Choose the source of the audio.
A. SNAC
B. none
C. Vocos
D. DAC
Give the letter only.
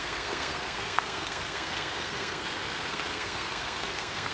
A